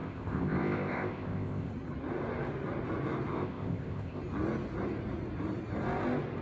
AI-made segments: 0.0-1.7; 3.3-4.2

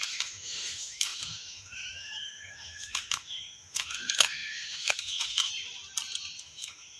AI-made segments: 0.0-5.5; 6.4-7.0

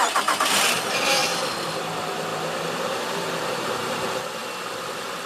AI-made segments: 0.0-1.2; 1.7-4.4